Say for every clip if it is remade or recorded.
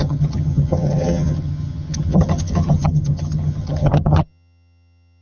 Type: remade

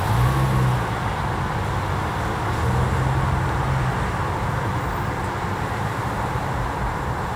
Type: recorded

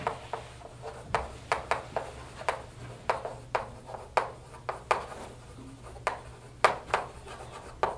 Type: recorded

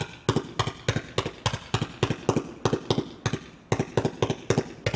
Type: recorded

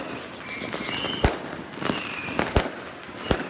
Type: recorded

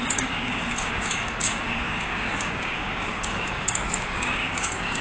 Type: remade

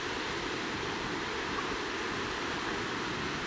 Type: recorded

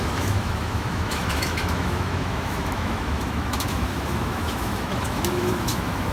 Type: remade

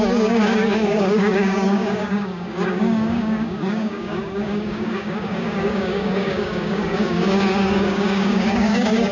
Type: remade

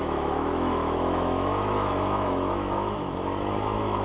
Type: remade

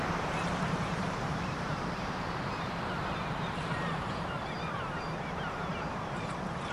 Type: remade